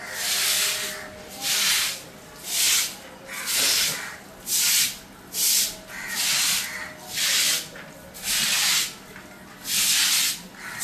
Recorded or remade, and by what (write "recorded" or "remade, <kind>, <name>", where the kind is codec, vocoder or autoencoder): recorded